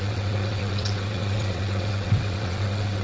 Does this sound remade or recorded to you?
remade